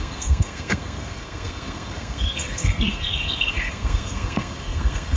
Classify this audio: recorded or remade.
remade